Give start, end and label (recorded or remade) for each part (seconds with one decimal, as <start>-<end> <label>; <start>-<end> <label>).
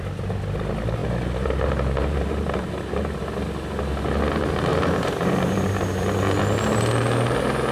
0.0-1.0 recorded; 1.0-3.2 remade; 3.2-4.7 recorded; 4.7-6.4 remade; 6.4-7.7 recorded